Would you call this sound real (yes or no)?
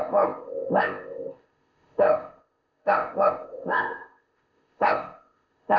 no